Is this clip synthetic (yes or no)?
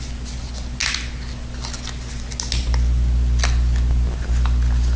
no